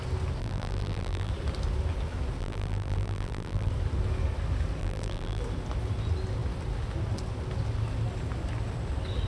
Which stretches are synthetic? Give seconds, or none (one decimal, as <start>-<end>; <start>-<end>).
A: 0.4-1.3; 2.4-3.7; 4.8-5.4